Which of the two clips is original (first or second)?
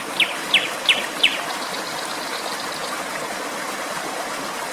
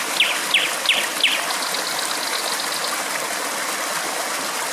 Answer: second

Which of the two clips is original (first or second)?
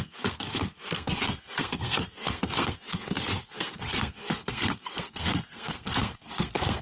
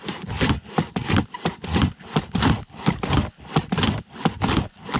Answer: second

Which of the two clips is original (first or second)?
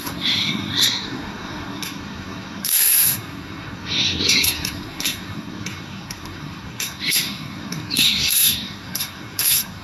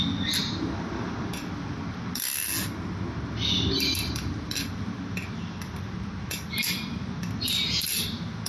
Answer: second